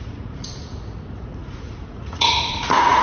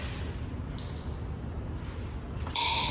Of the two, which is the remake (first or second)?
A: first